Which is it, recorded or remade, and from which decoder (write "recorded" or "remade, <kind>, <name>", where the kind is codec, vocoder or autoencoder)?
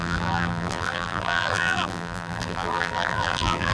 remade, vocoder, BigVGAN v2